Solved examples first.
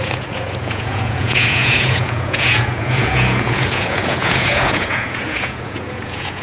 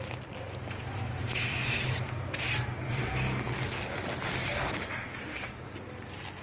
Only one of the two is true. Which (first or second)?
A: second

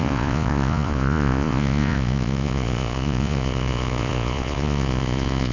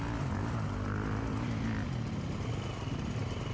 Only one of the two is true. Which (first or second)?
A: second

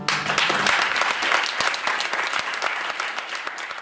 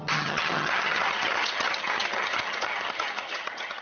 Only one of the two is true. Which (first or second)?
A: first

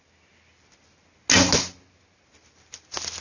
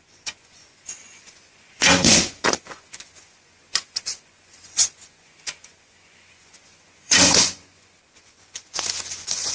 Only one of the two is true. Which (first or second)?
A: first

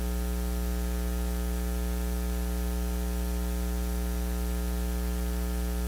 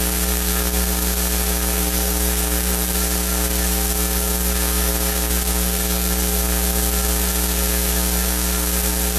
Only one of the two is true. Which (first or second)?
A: first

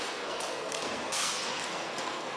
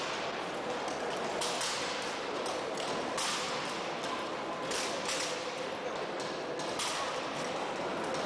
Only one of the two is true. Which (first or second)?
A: second